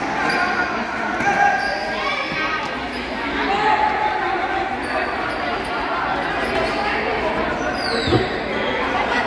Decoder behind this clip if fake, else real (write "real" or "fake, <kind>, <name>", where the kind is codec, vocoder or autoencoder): real